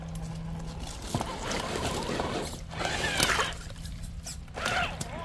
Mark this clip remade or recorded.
recorded